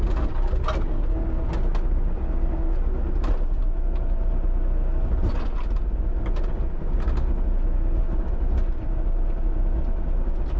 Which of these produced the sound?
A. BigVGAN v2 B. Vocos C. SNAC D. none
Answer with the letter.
D